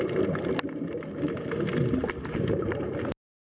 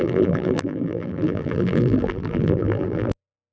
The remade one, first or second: second